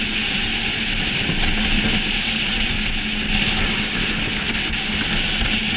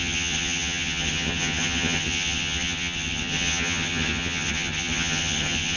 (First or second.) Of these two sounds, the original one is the first